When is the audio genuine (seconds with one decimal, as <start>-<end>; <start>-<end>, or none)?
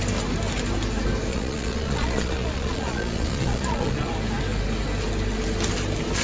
0.0-1.3; 4.1-6.2